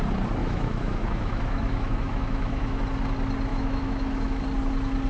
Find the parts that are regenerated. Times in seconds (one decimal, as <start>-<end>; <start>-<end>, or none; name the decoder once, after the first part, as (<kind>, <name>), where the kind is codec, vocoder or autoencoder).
0.4-2.8 (autoencoder, DAC-VAE); 3.5-4.4